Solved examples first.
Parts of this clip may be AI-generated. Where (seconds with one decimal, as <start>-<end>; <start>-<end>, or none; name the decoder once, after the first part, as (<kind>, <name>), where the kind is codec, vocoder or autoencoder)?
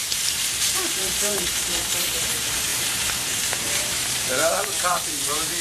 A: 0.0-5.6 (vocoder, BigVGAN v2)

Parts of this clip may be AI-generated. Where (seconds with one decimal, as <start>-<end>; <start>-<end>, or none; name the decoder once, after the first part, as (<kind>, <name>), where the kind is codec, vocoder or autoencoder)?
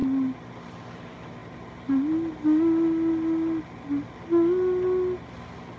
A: none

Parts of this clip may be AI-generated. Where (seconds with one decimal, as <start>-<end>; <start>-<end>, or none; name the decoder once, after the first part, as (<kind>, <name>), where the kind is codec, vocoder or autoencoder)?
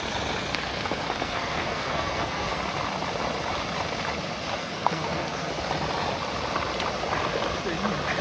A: 0.5-2.6 (codec, SNAC); 4.6-5.5